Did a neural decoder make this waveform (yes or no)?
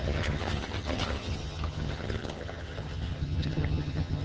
yes